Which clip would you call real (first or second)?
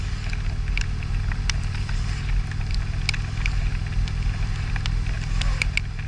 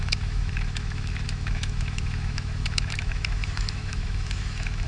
first